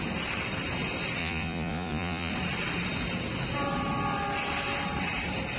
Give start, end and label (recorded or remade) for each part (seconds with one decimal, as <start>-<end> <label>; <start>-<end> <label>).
0.0-1.2 recorded; 1.2-2.3 remade; 2.3-5.6 recorded